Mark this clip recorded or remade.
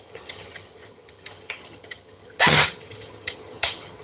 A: remade